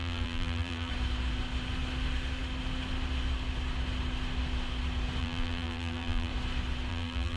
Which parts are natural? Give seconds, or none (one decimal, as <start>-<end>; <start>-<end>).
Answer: 0.9-5.2; 6.3-6.9